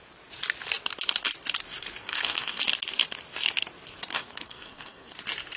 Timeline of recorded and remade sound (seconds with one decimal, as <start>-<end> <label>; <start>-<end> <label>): 0.0-2.0 recorded; 2.0-2.6 remade; 2.6-4.1 recorded; 4.1-5.1 remade; 5.1-5.6 recorded